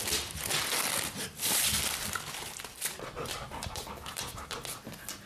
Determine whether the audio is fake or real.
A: real